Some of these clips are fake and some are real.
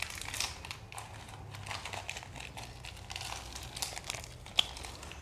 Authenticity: real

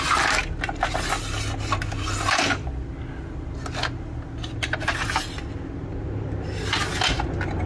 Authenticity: real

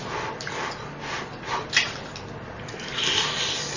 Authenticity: real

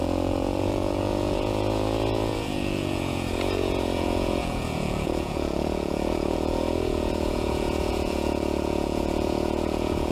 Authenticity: fake